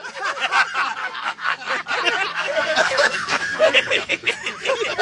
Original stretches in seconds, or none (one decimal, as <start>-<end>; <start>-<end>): 0.0-1.0; 1.7-2.3; 4.3-5.0